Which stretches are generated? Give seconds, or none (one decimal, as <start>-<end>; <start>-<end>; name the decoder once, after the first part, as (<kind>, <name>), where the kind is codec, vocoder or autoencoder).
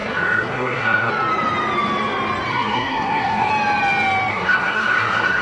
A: 0.0-1.1 (codec, SNAC); 2.5-3.5; 4.3-5.4